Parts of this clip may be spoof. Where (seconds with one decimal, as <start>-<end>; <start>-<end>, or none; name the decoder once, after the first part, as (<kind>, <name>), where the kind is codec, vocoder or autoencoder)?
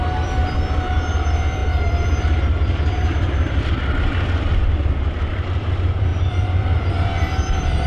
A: 0.0-0.4 (vocoder, BigVGAN v2); 1.1-7.9